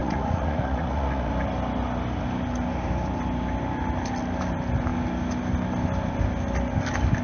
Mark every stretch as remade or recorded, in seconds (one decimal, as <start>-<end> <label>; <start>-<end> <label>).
0.0-1.3 remade; 1.3-7.2 recorded